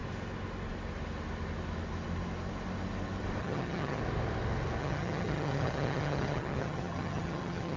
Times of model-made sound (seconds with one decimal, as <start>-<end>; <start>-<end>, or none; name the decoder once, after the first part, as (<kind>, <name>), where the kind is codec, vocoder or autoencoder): 3.4-4.0 (vocoder, HiFi-GAN); 4.8-7.8